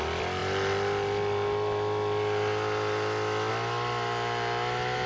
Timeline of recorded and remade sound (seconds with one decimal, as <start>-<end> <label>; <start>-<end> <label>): 0.0-5.1 recorded